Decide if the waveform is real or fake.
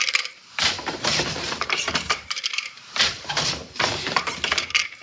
fake